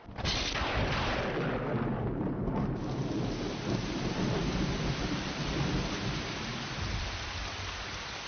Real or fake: real